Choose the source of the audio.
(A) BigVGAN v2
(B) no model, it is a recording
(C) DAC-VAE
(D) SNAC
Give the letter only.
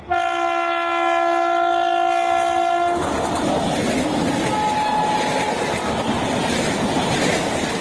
B